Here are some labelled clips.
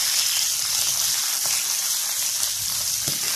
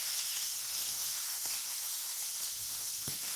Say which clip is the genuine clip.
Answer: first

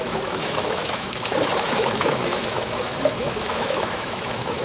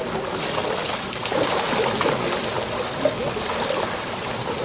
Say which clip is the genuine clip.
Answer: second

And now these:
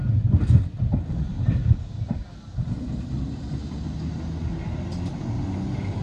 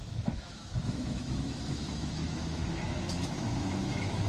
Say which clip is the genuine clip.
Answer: first